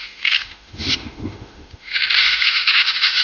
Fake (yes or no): yes